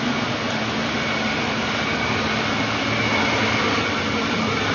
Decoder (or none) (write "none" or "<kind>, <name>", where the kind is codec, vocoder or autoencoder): none